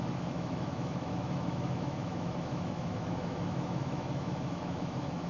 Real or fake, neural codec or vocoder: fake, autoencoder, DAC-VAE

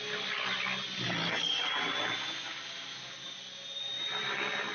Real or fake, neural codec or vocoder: real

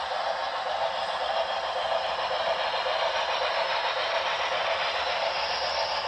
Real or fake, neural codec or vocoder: real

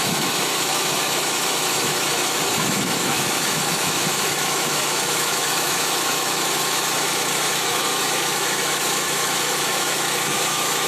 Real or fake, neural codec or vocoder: fake, autoencoder, DAC-VAE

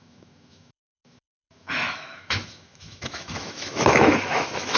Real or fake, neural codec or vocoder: fake, autoencoder, DAC-VAE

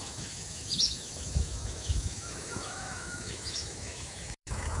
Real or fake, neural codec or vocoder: fake, autoencoder, DAC-VAE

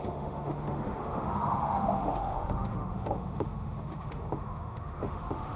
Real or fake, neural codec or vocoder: fake, autoencoder, DAC-VAE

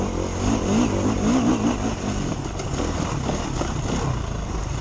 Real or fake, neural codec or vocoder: real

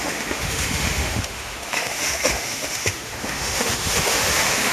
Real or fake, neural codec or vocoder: fake, autoencoder, DAC-VAE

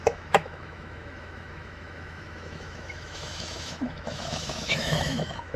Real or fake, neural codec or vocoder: fake, autoencoder, DAC-VAE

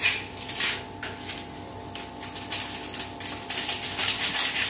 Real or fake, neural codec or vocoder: real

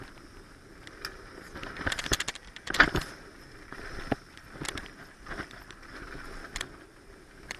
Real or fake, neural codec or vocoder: real